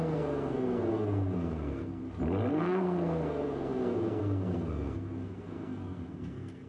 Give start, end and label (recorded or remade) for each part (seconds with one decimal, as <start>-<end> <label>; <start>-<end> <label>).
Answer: 0.0-2.0 remade; 2.0-2.5 recorded; 2.5-6.7 remade